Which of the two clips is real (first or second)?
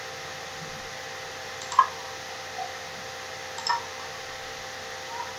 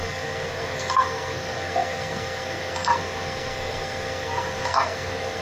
first